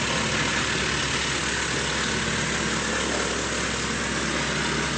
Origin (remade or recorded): recorded